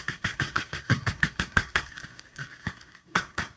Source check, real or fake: fake